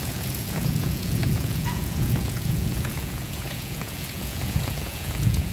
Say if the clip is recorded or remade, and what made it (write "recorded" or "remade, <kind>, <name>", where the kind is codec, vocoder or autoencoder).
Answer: remade, vocoder, Vocos